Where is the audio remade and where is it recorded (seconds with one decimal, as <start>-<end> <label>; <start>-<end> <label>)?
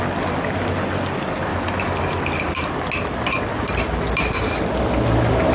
0.0-5.5 recorded